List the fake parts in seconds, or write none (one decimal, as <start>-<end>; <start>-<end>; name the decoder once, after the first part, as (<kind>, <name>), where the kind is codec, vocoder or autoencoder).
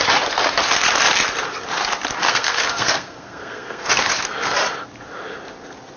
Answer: 2.2-3.9 (codec, SNAC)